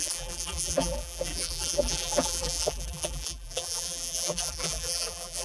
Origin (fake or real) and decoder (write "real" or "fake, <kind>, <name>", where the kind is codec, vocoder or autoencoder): fake, vocoder, BigVGAN v2